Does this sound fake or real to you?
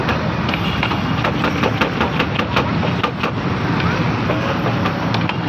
real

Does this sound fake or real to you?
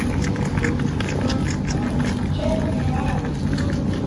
real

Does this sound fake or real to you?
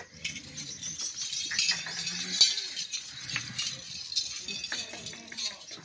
real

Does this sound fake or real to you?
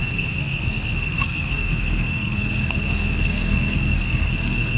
fake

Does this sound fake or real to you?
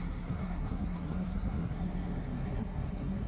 fake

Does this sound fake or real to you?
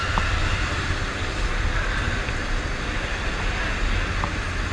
real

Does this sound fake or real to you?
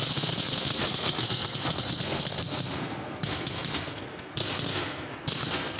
fake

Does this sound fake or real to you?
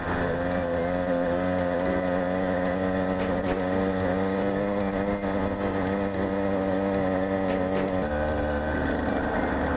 real